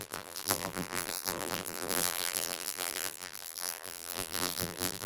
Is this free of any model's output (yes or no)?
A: no